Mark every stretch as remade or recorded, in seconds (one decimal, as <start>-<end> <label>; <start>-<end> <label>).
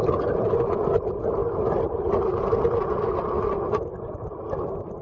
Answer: 0.0-5.0 recorded